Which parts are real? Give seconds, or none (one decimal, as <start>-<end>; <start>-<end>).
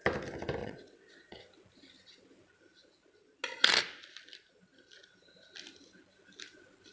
0.0-0.6; 1.4-6.9